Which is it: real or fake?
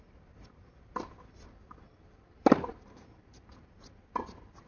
real